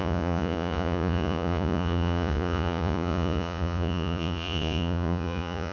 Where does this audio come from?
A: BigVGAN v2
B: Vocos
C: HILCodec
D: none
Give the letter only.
B